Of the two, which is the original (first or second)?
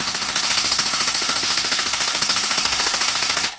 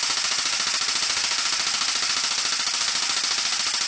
second